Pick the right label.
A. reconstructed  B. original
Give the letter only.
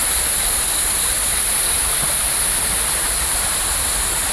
B